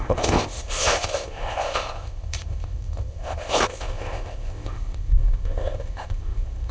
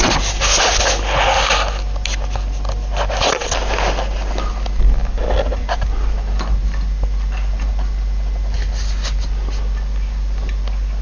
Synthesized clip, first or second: first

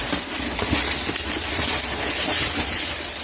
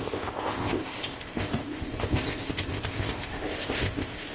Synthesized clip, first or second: second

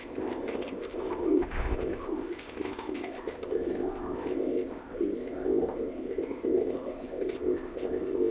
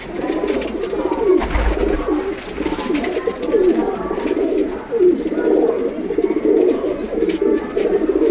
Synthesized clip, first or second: first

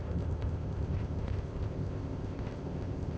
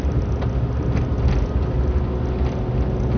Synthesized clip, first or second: first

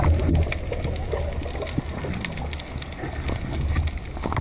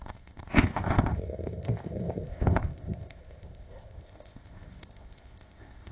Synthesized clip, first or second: second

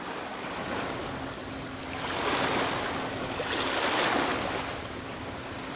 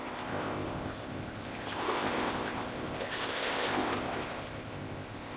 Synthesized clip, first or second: second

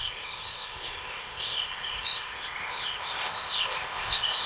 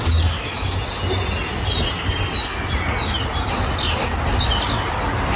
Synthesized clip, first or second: first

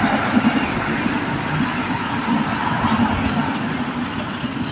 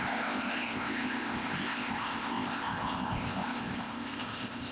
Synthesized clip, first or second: second